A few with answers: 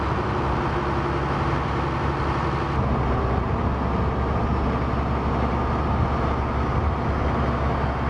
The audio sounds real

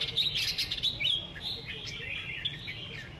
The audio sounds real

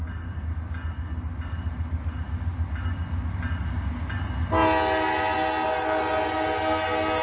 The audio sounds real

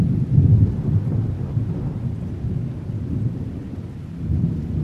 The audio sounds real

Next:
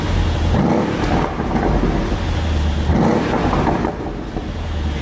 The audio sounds real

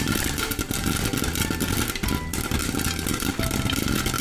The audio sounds real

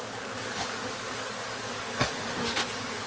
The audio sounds fake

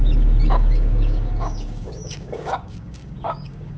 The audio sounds fake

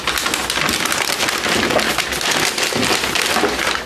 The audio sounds real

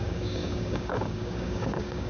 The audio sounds fake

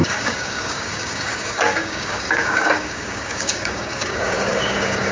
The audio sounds fake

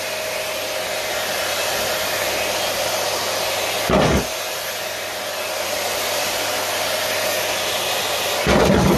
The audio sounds real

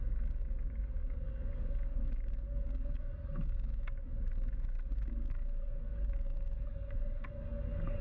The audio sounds fake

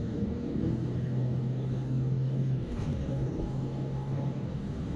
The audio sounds fake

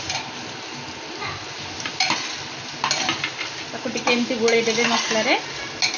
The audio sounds real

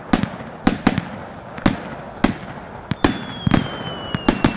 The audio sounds real